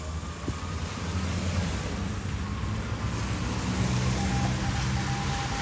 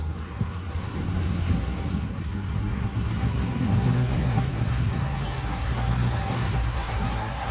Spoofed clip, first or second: second